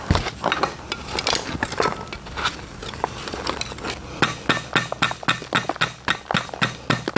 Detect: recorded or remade recorded